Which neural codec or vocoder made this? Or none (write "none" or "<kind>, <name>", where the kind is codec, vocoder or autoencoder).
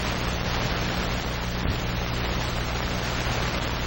none